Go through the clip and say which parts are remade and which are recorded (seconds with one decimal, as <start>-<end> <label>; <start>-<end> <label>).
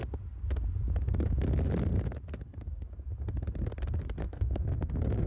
0.0-4.2 recorded; 4.2-5.3 remade